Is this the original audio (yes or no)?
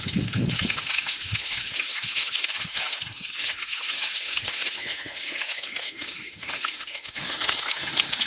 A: no